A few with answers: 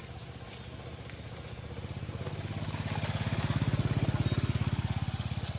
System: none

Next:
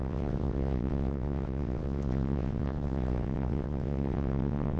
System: vocoder, WaveNeXt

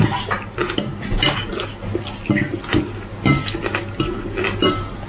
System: none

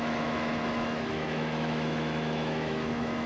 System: autoencoder, DAC-VAE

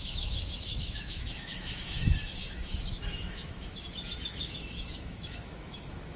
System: autoencoder, DAC-VAE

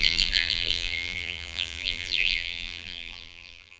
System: vocoder, BigVGAN v2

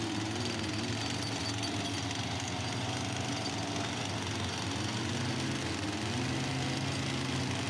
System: none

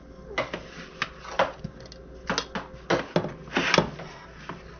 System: none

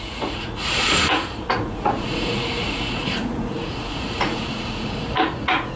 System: vocoder, Vocos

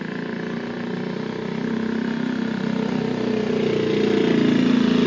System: none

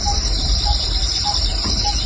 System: vocoder, BigVGAN v2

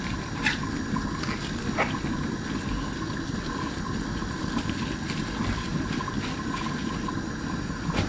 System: none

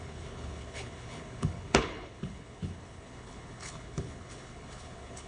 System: codec, HILCodec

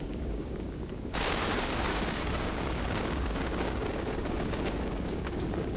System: codec, DAC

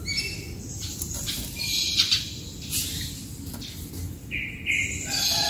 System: none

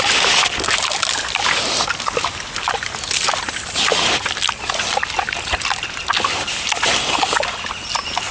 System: none